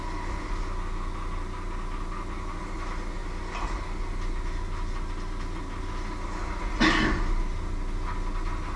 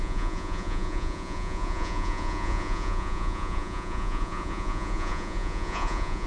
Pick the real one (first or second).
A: first